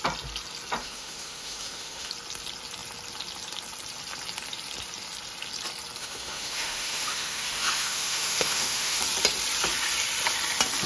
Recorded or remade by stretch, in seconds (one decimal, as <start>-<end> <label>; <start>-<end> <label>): 0.0-0.8 recorded; 0.8-2.1 remade; 2.1-6.0 recorded; 6.0-9.0 remade; 9.0-10.9 recorded

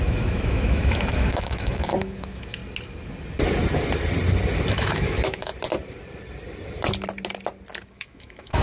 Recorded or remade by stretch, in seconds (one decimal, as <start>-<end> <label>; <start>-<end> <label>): 0.0-2.6 remade; 2.6-4.7 recorded; 4.7-5.5 remade; 5.5-7.9 recorded; 7.9-8.6 remade